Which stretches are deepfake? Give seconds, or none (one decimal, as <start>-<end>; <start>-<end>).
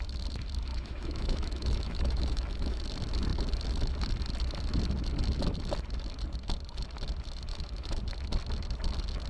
0.7-2.8; 7.5-8.0